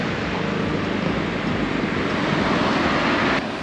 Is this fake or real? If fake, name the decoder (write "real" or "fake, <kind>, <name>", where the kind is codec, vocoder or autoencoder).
real